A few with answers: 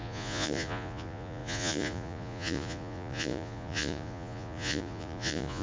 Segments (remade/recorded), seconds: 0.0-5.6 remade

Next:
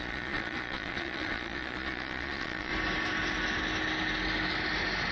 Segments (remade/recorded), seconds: 0.0-2.7 remade; 2.7-5.1 recorded

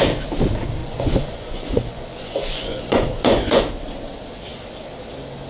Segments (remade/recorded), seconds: 0.0-0.8 recorded; 0.8-3.6 remade; 3.6-5.5 recorded

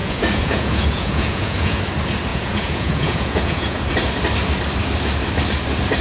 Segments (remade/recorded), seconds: 0.0-1.8 remade; 1.8-2.3 recorded; 2.3-3.8 remade; 3.8-6.0 recorded

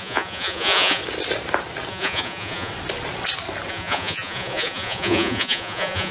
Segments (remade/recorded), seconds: 0.0-1.0 remade; 1.0-1.9 recorded; 1.9-2.7 remade; 2.7-3.7 recorded; 3.7-6.1 remade